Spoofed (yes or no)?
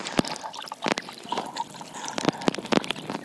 no